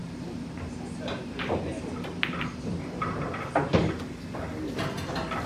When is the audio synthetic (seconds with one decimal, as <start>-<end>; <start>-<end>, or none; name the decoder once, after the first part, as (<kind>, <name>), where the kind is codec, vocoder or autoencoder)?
0.0-1.9 (vocoder, BigVGAN v2)